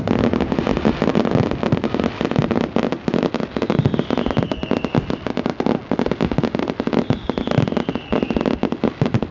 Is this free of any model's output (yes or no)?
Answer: yes